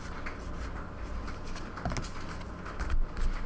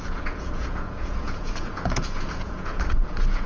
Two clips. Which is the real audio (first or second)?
first